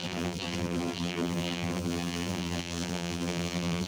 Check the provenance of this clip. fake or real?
fake